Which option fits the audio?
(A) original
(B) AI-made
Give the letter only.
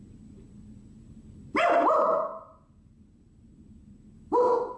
A